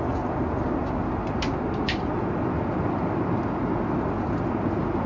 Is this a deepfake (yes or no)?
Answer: no